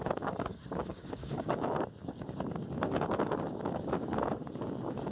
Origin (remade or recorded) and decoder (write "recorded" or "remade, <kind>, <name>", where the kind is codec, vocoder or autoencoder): remade, codec, DAC